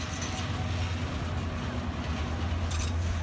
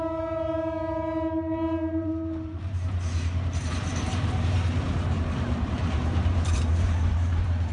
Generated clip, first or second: second